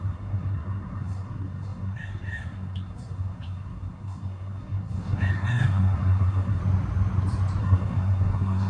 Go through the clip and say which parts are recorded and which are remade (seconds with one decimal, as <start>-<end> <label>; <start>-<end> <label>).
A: 0.0-6.6 remade; 6.6-7.6 recorded; 7.6-8.7 remade